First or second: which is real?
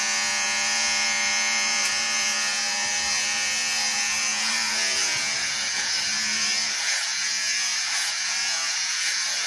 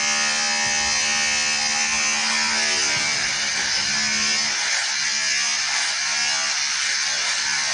second